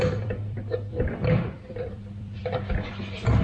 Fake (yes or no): yes